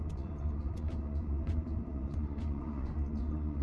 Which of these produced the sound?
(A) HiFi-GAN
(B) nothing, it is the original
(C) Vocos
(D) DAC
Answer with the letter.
C